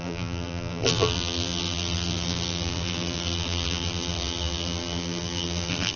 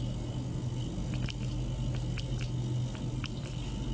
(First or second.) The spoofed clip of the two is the first